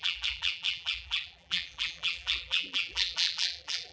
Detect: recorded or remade remade